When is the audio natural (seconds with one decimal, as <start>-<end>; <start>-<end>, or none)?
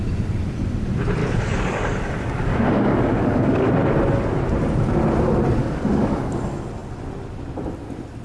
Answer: 0.0-1.2; 3.7-5.6; 6.3-8.2